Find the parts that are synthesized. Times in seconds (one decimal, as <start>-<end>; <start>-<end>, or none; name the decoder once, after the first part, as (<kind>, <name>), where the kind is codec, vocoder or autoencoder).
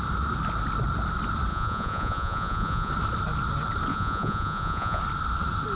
1.5-2.9 (vocoder, Vocos); 3.9-5.0